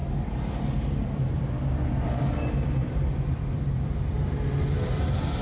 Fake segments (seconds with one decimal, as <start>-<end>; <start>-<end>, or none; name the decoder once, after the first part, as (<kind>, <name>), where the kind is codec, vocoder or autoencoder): none